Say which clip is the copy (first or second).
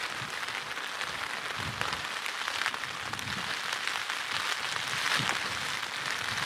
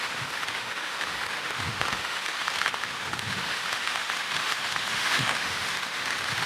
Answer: second